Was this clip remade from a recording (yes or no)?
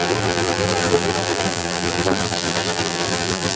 yes